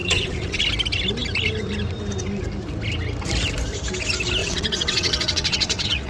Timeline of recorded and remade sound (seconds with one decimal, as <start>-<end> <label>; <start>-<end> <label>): 0.0-0.6 remade; 0.6-4.4 recorded; 4.4-6.1 remade